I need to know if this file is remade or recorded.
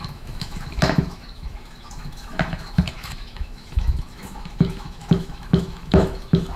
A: remade